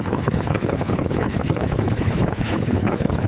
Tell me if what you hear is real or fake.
fake